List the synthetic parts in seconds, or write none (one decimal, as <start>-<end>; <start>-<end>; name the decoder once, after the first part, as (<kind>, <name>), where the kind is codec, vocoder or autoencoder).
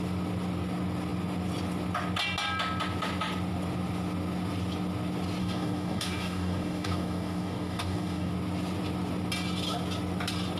5.4-8.3 (codec, DAC)